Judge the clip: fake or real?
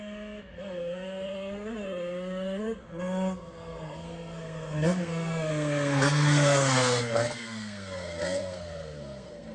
fake